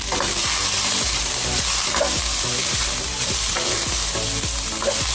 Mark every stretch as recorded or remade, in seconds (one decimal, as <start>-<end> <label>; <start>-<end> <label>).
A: 0.0-5.1 recorded